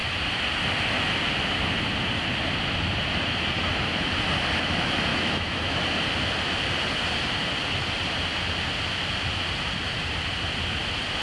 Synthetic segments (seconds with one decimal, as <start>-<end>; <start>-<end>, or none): 5.1-5.8